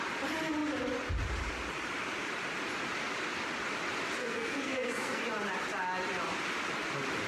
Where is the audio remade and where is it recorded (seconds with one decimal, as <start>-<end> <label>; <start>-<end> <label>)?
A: 0.0-4.2 recorded; 4.2-5.2 remade; 5.2-7.3 recorded